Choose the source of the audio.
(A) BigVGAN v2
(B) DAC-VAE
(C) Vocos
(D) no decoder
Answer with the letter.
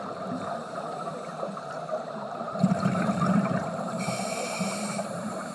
A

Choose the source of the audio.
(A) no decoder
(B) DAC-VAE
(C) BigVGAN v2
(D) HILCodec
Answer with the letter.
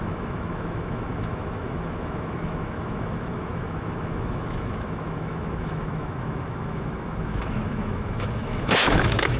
B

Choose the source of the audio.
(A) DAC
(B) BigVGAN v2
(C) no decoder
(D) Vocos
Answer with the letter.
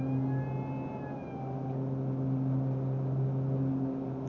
C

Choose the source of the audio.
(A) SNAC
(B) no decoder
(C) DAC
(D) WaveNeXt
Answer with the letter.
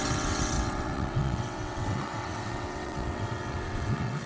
D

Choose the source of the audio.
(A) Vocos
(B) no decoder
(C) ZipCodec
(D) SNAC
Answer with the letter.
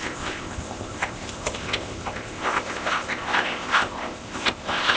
C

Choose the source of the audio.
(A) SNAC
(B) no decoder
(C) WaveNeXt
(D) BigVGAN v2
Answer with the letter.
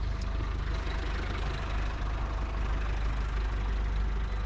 B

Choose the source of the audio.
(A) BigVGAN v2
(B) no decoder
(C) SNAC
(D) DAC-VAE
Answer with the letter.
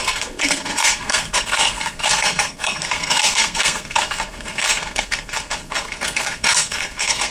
C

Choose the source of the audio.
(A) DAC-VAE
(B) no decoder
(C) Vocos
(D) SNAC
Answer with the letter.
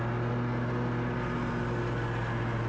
B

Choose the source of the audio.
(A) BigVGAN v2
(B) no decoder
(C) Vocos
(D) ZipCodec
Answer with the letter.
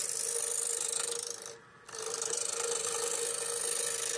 B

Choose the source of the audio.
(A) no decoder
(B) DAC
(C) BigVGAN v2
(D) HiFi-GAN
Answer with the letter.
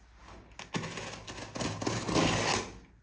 A